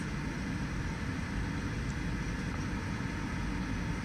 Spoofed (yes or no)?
no